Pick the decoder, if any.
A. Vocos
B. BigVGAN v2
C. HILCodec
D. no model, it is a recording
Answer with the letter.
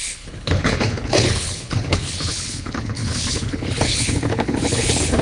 C